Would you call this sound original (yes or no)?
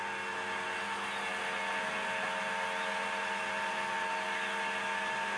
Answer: yes